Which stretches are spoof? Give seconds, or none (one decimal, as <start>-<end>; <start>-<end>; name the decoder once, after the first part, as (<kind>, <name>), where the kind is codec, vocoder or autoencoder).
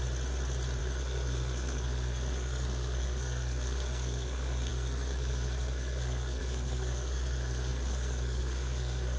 0.8-9.2 (codec, SNAC)